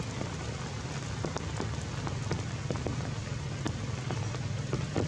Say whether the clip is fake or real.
real